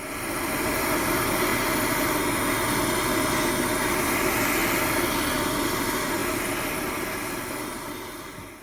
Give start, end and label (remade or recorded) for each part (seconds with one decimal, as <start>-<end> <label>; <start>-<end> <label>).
0.0-1.5 remade; 1.5-3.8 recorded; 3.8-4.6 remade; 4.6-5.8 recorded; 5.8-8.6 remade